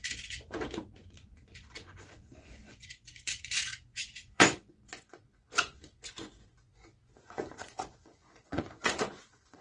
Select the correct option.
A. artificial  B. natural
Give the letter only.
A